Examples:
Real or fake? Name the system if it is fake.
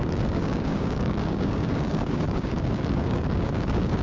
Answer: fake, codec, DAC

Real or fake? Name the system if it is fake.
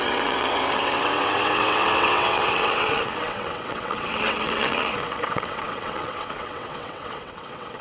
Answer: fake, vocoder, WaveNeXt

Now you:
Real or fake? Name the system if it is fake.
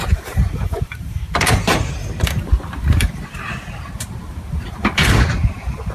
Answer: fake, vocoder, BigVGAN v2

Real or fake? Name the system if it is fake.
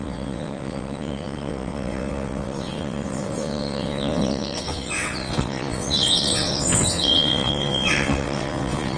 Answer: fake, vocoder, WaveNeXt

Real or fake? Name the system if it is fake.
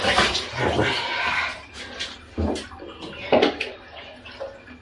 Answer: real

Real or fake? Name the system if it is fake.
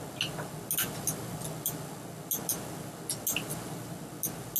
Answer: real